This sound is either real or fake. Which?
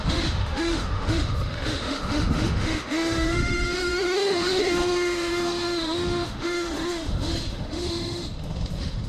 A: fake